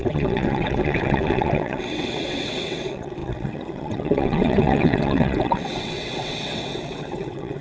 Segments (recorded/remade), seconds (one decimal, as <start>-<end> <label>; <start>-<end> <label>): 0.0-7.6 remade